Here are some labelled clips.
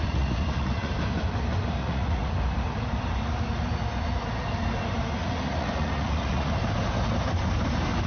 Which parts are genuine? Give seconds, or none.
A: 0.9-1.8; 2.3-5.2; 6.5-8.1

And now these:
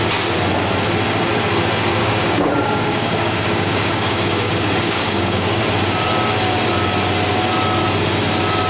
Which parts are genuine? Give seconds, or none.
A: 0.0-1.9; 5.6-8.7

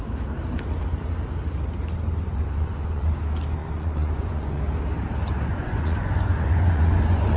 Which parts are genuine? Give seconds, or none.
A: 0.0-2.3; 3.1-3.6; 4.6-5.5

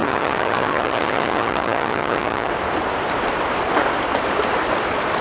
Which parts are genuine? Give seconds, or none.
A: 2.5-5.2

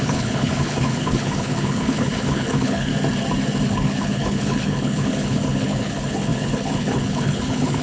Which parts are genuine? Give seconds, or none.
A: 2.9-3.7

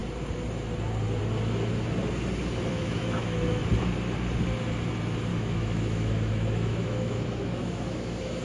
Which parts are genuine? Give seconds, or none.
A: 0.0-2.7; 3.6-5.3

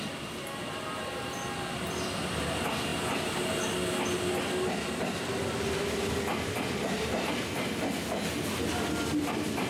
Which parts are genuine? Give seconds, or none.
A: 0.0-9.7

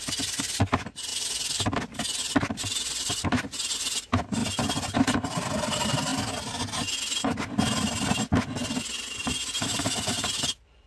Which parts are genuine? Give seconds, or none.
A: 1.1-2.4; 6.1-9.2